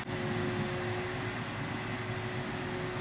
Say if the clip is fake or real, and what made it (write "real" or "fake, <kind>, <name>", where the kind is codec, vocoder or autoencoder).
real